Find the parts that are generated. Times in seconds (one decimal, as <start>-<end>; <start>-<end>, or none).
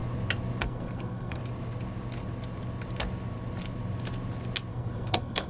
0.6-1.4; 4.7-5.5